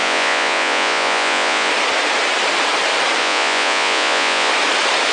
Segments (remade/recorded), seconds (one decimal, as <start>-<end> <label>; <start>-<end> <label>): 0.0-1.7 remade; 1.7-3.2 recorded; 3.2-4.5 remade; 4.5-5.1 recorded